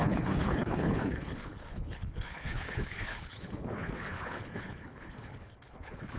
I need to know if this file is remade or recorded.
remade